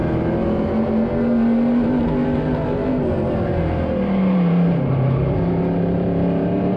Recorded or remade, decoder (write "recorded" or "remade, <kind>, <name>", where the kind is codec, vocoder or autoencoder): remade, vocoder, BigVGAN v2